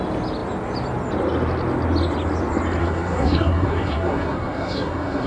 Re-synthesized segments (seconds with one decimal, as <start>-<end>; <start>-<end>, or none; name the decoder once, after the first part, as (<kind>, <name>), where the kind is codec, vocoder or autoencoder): 2.8-5.3 (codec, SNAC)